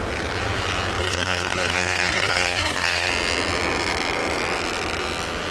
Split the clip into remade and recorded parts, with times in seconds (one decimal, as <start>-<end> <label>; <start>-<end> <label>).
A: 0.0-1.0 recorded; 1.0-3.1 remade; 3.1-5.5 recorded